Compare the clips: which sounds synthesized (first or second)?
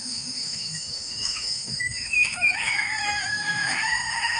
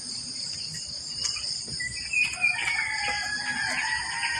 first